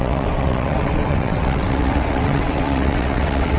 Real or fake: fake